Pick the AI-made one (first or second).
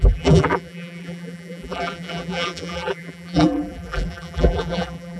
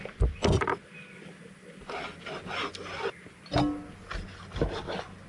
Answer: first